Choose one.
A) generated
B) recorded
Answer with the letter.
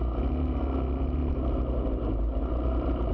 B